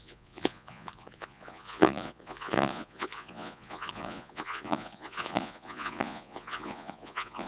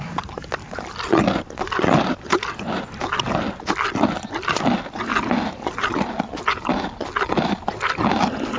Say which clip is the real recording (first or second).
second